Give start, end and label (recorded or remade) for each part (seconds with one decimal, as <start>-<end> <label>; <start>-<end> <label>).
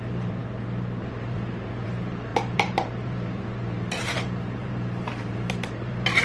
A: 0.0-6.2 remade